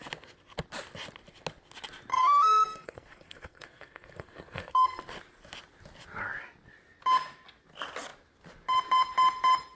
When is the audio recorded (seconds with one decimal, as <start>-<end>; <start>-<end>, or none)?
0.0-2.1; 5.0-9.8